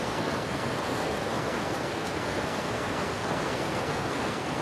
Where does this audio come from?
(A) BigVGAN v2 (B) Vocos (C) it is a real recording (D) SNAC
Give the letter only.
D